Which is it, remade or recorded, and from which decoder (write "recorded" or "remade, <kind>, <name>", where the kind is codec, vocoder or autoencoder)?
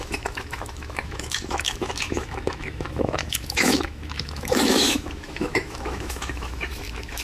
remade, autoencoder, DAC-VAE